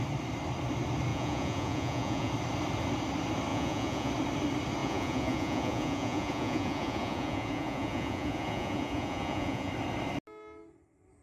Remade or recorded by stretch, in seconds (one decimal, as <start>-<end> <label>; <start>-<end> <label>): 0.0-1.1 recorded; 1.1-2.3 remade; 2.3-3.5 recorded; 3.5-4.1 remade; 4.1-4.8 recorded; 4.8-9.7 remade; 9.7-11.2 recorded